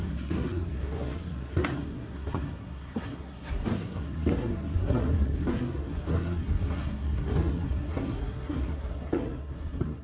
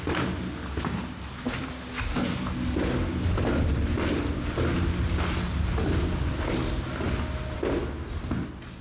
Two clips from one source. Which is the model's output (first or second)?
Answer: first